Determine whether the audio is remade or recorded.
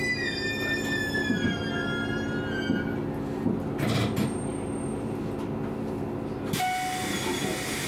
recorded